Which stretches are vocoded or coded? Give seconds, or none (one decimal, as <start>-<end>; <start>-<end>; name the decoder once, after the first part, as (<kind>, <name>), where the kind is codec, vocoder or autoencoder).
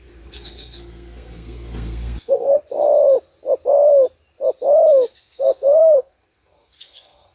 0.0-2.6 (codec, SNAC); 5.1-7.3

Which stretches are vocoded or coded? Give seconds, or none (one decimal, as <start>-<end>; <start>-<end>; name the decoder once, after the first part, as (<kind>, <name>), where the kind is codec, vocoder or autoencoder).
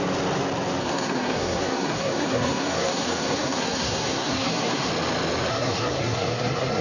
0.8-4.9 (codec, SNAC); 5.5-6.8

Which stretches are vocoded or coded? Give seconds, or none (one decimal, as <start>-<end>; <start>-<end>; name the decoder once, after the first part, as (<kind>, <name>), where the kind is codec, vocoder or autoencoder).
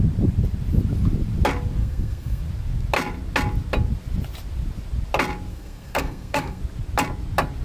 1.8-2.4 (codec, SNAC); 5.5-6.6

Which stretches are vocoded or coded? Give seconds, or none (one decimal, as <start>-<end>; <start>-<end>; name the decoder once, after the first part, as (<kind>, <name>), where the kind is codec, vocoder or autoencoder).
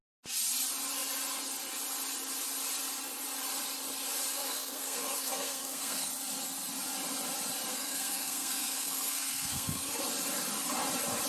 4.3-6.1 (codec, SNAC); 7.7-10.0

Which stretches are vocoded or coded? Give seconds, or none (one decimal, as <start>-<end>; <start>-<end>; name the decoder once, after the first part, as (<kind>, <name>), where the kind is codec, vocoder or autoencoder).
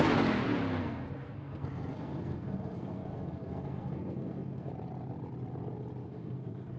0.8-4.7 (codec, SNAC); 6.0-6.8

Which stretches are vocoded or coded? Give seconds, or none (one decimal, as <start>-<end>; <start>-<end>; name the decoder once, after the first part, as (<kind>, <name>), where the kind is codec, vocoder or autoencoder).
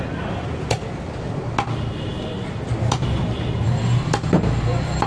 none